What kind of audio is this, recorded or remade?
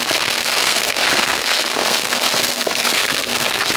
remade